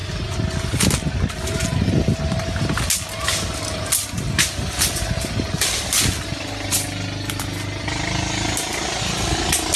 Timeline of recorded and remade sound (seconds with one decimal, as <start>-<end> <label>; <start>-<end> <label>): 0.0-9.8 recorded